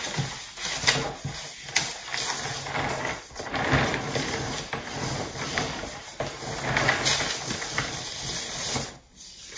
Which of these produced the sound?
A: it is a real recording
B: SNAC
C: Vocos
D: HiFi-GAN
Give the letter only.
A